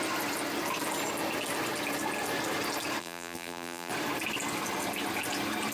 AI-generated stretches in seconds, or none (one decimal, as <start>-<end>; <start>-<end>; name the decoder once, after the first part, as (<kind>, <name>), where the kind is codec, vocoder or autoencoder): 3.0-3.9 (vocoder, BigVGAN v2)